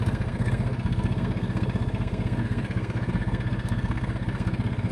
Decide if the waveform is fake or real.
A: fake